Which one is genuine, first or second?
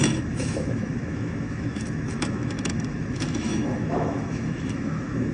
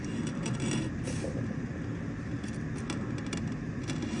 second